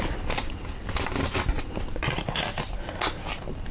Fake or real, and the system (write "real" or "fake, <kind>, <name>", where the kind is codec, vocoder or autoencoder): real